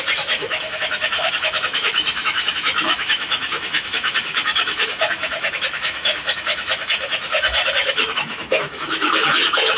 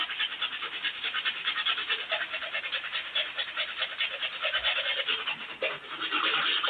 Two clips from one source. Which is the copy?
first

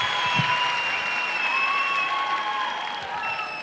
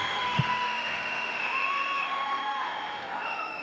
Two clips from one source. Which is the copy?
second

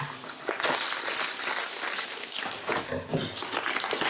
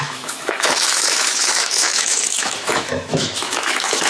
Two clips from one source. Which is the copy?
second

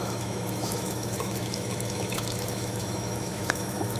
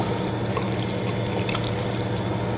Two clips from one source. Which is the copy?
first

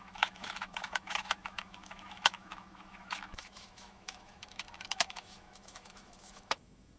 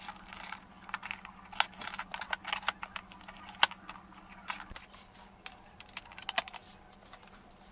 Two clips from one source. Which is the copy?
first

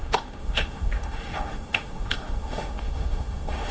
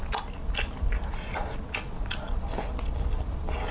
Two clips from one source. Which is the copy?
first